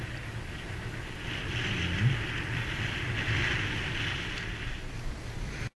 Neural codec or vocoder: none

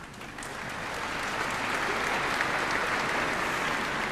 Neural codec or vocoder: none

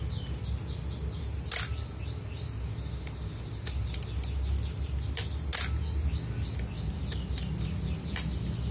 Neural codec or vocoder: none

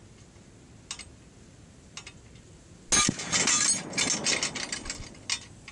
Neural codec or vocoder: none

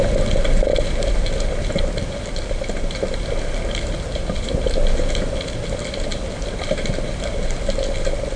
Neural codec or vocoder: none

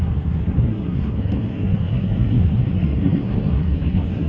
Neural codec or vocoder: codec, SNAC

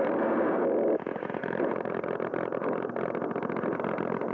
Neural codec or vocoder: none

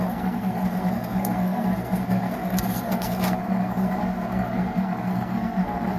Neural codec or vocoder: codec, SNAC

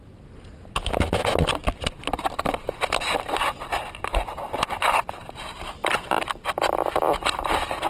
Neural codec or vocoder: none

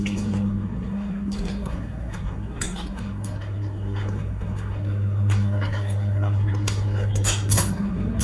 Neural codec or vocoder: codec, SNAC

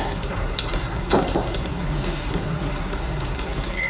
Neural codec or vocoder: codec, SNAC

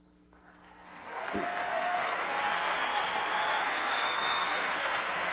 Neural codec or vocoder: codec, SNAC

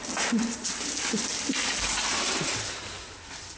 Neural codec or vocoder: none